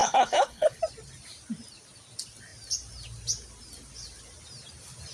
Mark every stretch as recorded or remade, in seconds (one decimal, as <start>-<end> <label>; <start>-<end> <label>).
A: 0.0-0.8 remade; 0.8-5.1 recorded